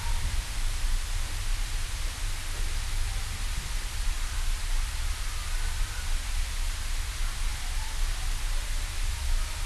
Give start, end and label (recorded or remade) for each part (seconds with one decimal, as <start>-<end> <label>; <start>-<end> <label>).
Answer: 0.0-9.7 recorded

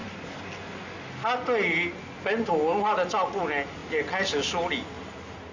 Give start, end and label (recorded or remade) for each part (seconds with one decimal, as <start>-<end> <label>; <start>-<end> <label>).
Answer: 0.0-5.5 recorded

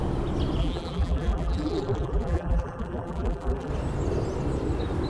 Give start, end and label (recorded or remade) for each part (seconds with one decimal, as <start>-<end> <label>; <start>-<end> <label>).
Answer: 0.0-0.6 recorded; 0.6-3.7 remade; 3.7-5.1 recorded

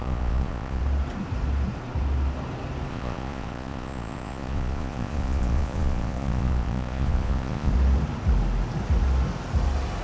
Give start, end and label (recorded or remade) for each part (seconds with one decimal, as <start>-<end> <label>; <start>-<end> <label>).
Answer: 0.0-0.8 remade; 0.8-2.9 recorded; 2.9-7.7 remade; 7.7-10.0 recorded